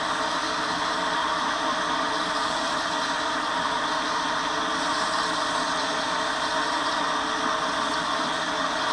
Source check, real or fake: fake